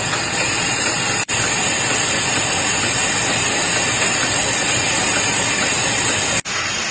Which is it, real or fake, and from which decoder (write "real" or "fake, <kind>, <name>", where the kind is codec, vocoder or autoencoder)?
real